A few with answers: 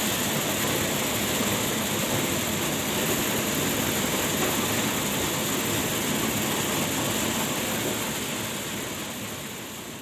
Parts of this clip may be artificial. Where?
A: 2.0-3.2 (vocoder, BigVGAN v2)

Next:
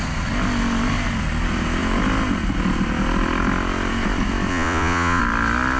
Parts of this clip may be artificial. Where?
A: 4.5-5.2 (vocoder, Vocos)

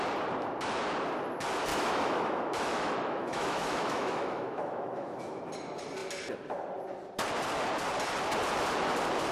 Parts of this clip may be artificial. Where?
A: 1.7-5.4 (autoencoder, DAC-VAE)

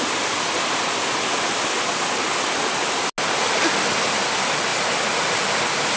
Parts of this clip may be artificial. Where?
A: none

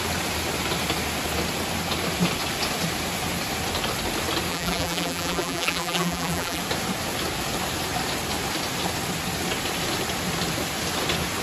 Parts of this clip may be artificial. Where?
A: 4.5-6.6 (vocoder, BigVGAN v2)

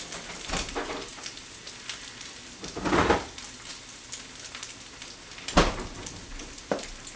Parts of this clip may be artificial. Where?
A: 1.1-1.7 (vocoder, BigVGAN v2)